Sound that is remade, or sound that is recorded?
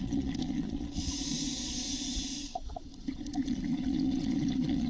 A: remade